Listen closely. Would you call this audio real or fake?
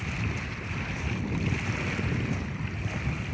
real